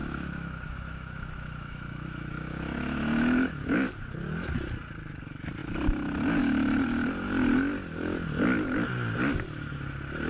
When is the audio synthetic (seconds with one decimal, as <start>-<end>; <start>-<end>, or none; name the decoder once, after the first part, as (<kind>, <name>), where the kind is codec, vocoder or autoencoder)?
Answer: 0.0-3.9 (autoencoder, DAC-VAE)